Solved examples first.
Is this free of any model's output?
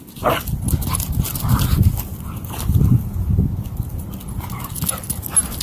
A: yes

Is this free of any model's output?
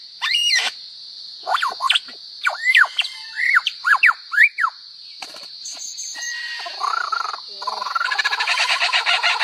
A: no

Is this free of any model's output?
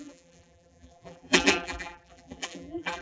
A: no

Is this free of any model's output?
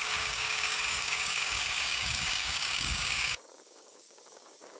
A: no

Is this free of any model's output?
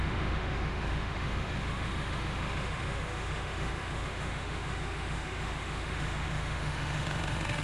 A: no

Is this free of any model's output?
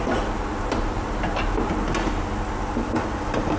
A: yes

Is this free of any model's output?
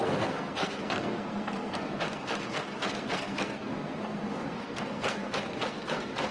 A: no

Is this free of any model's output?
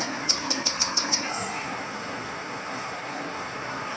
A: no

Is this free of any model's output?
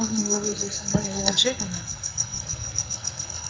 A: no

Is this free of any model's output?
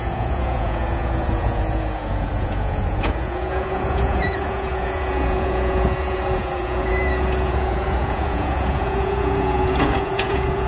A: no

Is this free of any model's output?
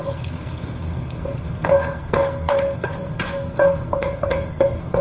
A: no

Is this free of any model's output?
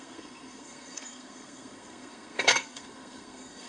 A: no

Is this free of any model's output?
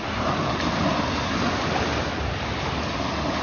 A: yes